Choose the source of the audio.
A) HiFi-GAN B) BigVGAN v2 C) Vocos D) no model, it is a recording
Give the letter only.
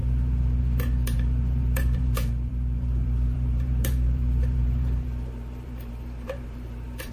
B